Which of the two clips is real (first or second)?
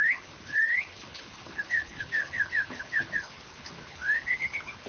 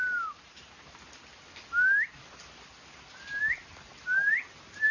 second